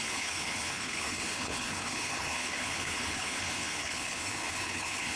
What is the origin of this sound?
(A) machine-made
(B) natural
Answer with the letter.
A